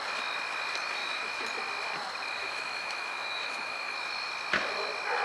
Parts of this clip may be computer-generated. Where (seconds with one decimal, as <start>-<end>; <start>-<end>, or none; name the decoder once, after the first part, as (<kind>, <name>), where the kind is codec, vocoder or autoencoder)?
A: 1.0-1.5 (autoencoder, DAC-VAE); 2.4-4.3